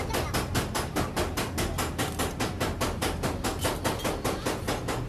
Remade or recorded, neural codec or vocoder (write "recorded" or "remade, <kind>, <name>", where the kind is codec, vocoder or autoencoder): recorded